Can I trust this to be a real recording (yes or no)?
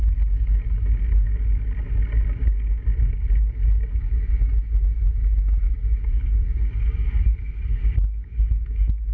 yes